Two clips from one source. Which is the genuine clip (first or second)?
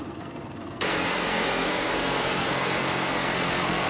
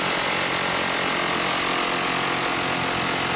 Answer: second